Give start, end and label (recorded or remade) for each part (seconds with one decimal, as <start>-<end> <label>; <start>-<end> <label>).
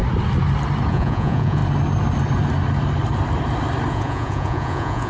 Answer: 0.0-0.9 recorded; 0.9-1.6 remade; 1.6-3.9 recorded; 3.9-5.1 remade